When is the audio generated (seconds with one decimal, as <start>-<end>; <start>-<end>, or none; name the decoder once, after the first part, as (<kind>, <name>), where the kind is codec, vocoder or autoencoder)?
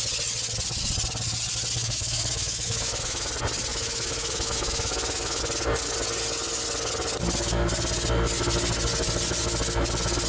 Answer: 1.8-3.3 (autoencoder, DAC-VAE); 3.7-5.4